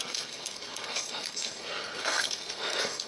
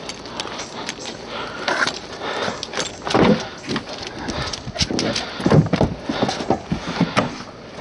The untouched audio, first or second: second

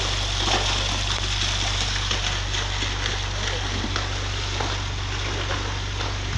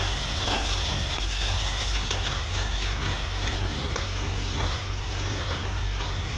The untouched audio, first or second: first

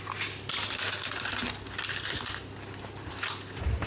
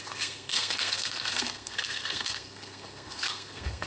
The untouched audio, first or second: first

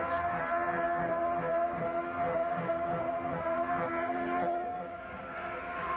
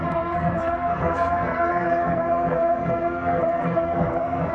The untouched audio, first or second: first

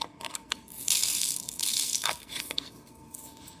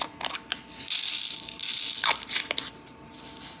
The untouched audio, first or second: second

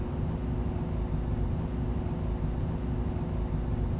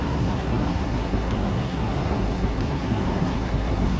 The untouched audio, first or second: first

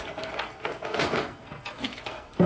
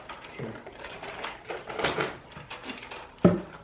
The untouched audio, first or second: second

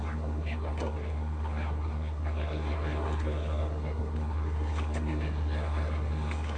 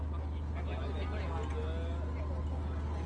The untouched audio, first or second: second